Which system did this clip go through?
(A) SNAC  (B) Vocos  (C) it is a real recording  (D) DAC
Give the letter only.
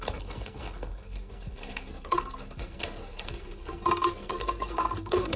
A